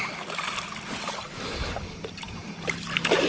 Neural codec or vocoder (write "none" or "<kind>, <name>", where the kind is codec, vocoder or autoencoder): none